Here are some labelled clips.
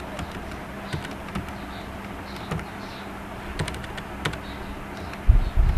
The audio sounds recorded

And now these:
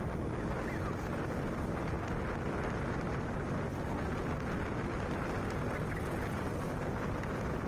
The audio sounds recorded